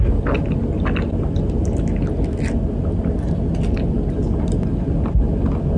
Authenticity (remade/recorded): recorded